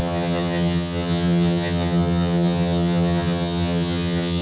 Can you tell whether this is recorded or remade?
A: remade